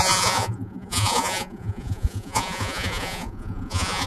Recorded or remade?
remade